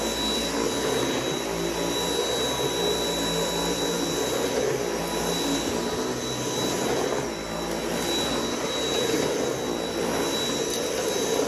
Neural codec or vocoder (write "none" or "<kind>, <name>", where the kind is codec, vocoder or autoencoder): none